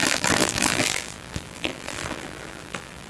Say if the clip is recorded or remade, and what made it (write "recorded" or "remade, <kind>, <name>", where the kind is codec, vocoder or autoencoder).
remade, vocoder, BigVGAN v2